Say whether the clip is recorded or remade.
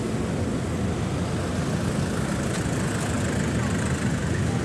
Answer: recorded